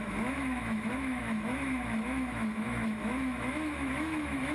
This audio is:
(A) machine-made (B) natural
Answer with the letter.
A